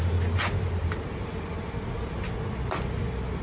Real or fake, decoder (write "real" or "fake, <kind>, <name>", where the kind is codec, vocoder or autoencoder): real